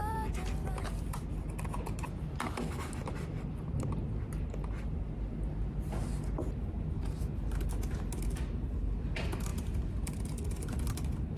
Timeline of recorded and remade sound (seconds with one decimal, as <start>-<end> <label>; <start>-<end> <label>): 0.0-1.1 remade; 1.1-9.5 recorded; 9.5-10.8 remade; 10.8-11.4 recorded